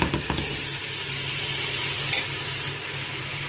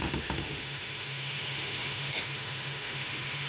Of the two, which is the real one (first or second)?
first